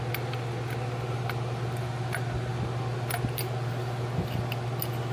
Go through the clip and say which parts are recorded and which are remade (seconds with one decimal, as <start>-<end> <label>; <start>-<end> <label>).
0.0-5.1 recorded

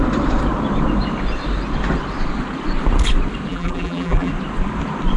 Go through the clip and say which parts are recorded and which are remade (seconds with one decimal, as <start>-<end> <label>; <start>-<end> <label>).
0.0-3.5 recorded; 3.5-4.3 remade; 4.3-5.2 recorded